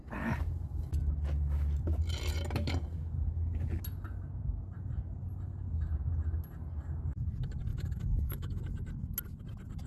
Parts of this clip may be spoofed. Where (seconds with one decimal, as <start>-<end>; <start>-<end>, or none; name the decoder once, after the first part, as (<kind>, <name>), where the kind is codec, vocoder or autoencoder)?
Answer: 7.7-8.6 (autoencoder, DAC-VAE)